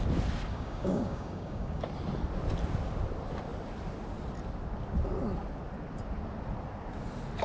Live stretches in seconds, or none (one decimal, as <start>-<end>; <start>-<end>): 0.0-0.5; 1.8-7.4

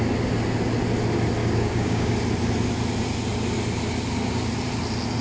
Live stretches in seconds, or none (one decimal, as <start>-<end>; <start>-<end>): 0.0-1.4; 2.1-5.2